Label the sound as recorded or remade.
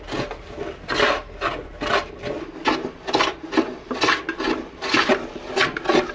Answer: recorded